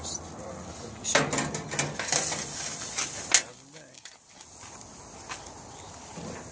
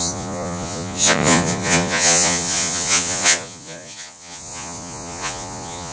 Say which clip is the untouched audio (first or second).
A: first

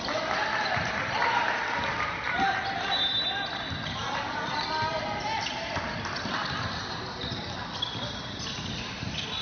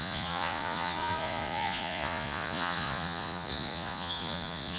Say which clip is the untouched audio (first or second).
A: first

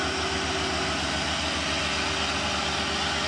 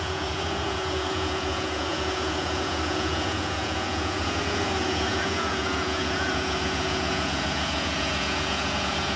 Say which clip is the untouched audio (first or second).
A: first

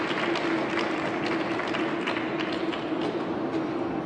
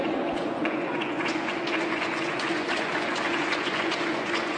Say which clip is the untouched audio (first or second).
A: first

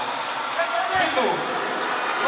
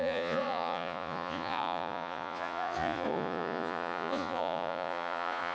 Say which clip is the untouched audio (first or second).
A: first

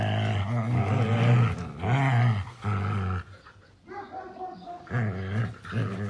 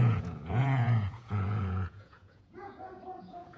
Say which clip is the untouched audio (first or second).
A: first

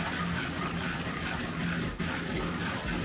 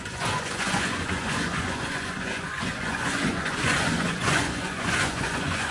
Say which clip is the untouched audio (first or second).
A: first